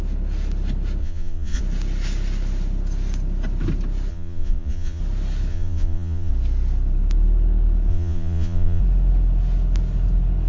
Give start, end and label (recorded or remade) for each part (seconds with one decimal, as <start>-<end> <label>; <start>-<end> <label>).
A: 0.0-1.0 recorded; 1.0-1.6 remade; 1.6-4.1 recorded; 4.1-5.0 remade; 5.0-5.5 recorded; 5.5-6.3 remade; 6.3-7.9 recorded; 7.9-8.8 remade; 8.8-10.5 recorded